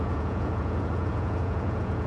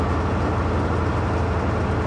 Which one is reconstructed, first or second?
first